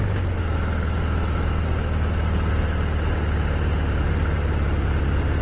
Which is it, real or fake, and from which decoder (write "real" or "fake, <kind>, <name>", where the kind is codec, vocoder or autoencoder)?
real